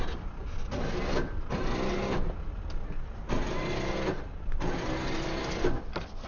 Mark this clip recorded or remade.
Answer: recorded